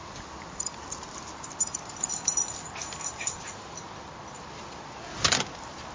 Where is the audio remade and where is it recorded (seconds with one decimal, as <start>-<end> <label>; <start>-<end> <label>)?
0.0-3.5 remade; 3.5-5.9 recorded